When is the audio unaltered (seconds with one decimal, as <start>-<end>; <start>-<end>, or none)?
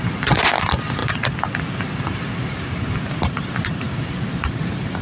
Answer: 0.0-5.0